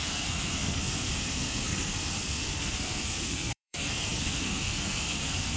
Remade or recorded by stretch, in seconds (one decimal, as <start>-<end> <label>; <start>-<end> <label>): 0.0-5.6 remade